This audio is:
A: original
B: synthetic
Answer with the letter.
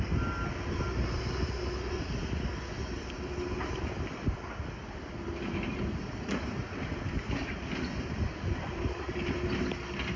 A